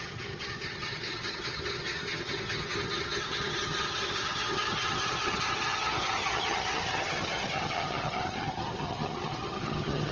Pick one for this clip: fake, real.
fake